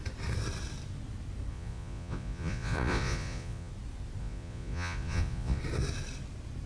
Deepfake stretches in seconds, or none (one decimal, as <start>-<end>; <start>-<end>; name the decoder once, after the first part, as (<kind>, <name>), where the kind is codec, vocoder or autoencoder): 1.5-3.7 (vocoder, Vocos); 4.2-5.6